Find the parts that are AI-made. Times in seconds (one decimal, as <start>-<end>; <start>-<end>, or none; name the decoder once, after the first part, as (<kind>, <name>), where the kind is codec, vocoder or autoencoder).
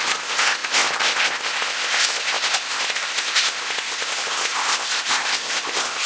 0.0-6.1 (codec, ZipCodec)